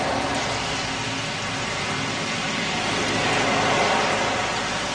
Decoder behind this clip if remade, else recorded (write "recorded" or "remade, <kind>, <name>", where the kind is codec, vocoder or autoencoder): recorded